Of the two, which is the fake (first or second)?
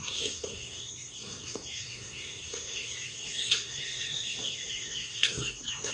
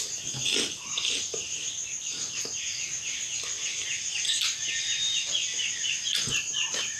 first